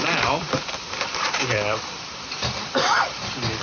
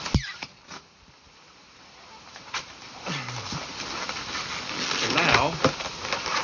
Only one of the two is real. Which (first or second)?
second